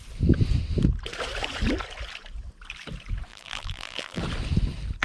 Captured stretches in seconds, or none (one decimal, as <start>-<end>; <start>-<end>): 0.0-3.3; 4.2-5.0